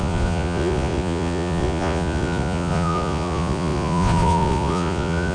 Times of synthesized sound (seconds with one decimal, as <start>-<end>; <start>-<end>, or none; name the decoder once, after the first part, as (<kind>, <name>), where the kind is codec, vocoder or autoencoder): 0.0-5.3 (vocoder, Vocos)